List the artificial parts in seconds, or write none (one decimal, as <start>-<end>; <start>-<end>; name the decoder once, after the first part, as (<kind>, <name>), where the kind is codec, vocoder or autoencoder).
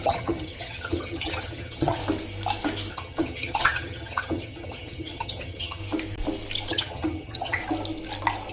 0.0-2.0 (vocoder, HiFi-GAN); 2.9-5.8; 6.7-7.6